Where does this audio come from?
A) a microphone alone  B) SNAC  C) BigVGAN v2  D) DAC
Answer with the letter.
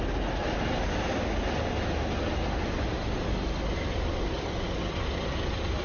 A